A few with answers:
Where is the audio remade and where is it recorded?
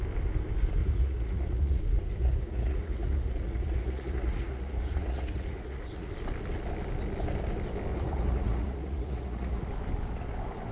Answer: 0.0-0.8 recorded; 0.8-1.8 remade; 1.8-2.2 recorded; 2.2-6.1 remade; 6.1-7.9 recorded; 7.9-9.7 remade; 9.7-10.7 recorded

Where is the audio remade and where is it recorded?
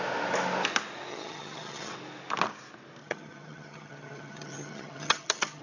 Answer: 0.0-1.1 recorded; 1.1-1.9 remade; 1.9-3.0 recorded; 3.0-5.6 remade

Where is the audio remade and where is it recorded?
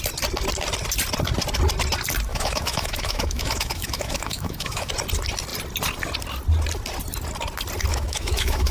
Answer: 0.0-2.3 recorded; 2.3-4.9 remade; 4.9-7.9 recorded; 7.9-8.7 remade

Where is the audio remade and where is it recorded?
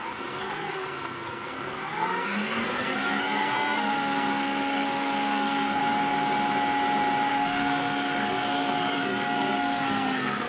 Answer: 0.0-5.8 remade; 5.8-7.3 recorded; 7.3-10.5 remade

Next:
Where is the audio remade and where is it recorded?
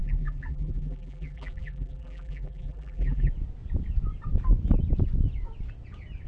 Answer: 0.0-3.3 remade; 3.3-6.3 recorded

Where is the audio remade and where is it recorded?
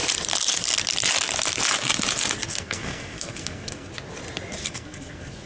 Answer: 0.0-2.5 recorded; 2.5-3.9 remade; 3.9-4.6 recorded; 4.6-5.5 remade